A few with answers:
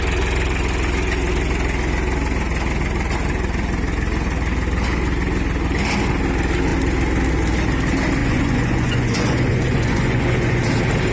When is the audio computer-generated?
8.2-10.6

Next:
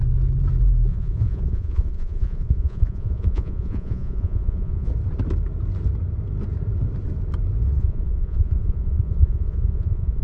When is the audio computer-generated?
0.9-4.9; 7.8-10.2

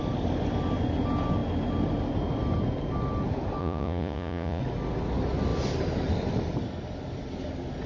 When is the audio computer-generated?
3.6-4.6

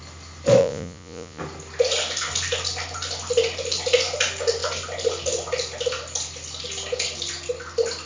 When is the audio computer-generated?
0.6-1.4

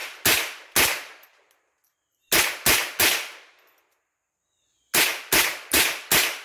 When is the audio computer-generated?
none

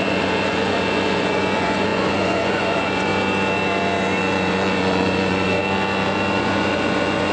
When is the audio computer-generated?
0.0-3.1; 4.2-5.6; 6.3-7.3

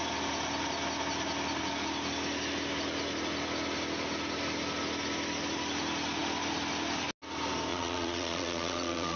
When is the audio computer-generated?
7.7-9.2

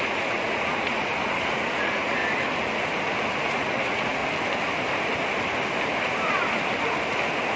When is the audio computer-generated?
0.0-2.2; 3.4-4.2